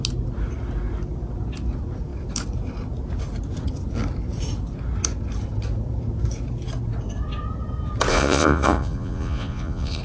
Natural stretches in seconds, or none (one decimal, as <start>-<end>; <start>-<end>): 0.0-8.1